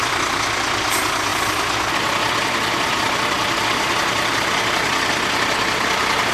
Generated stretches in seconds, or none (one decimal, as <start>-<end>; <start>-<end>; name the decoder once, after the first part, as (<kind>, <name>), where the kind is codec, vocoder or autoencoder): none